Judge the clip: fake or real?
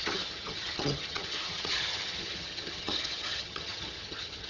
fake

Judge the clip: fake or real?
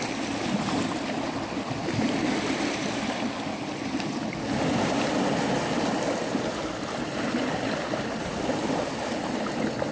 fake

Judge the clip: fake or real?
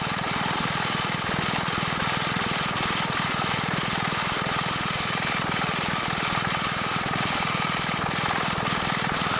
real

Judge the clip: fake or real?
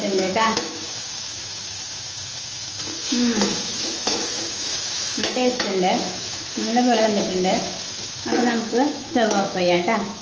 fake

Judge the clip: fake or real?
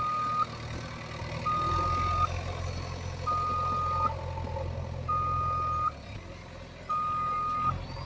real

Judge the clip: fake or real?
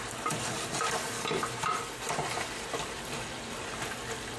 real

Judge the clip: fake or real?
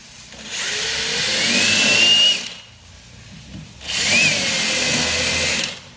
real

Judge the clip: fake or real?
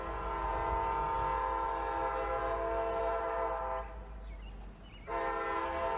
real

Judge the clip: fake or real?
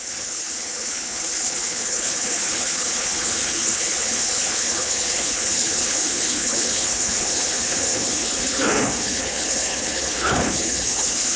fake